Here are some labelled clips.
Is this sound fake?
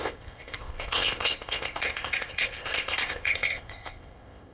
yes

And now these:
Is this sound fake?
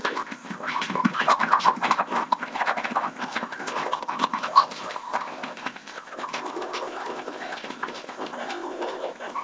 yes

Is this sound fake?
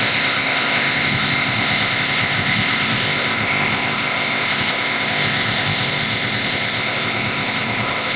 yes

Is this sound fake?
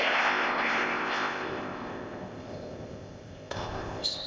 yes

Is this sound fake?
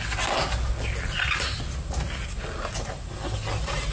no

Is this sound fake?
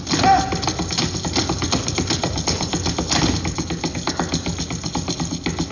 no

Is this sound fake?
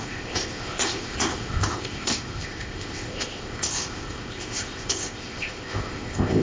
yes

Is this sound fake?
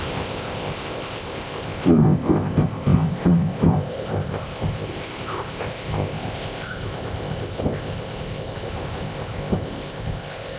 yes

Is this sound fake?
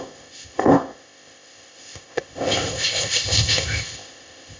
yes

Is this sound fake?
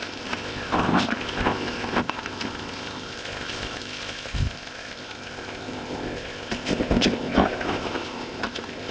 yes